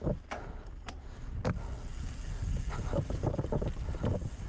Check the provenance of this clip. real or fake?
real